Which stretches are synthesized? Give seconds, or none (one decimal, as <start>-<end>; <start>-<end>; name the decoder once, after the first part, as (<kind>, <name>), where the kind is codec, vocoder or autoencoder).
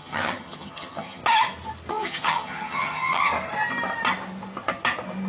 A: 0.0-1.2 (vocoder, HiFi-GAN); 1.9-3.3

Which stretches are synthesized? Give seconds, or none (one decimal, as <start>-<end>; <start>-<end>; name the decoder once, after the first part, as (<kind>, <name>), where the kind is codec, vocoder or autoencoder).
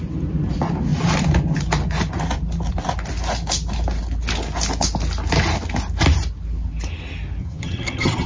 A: 7.4-8.3 (vocoder, HiFi-GAN)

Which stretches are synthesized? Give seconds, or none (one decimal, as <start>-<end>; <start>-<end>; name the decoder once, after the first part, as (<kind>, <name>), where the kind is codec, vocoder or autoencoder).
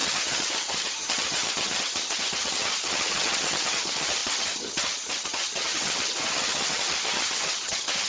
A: 0.0-8.1 (vocoder, HiFi-GAN)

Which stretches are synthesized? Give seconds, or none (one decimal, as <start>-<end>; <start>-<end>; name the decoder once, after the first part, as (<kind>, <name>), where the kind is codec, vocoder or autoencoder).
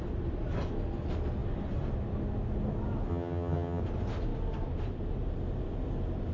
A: 3.1-3.8 (vocoder, HiFi-GAN)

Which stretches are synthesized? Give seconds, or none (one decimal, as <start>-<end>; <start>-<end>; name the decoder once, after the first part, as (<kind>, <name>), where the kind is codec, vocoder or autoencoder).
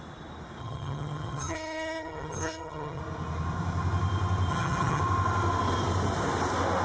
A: 0.6-3.0 (vocoder, HiFi-GAN); 4.5-5.0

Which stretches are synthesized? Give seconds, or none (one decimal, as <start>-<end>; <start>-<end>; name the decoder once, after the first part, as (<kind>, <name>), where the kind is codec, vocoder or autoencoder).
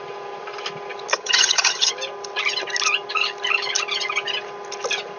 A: 1.1-1.9 (vocoder, HiFi-GAN)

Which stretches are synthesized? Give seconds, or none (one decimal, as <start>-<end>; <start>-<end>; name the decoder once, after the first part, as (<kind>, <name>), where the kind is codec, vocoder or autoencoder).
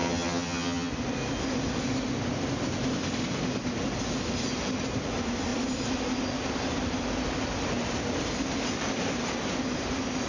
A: 0.0-0.9 (vocoder, HiFi-GAN)